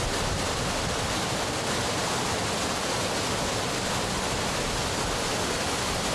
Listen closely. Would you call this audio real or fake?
real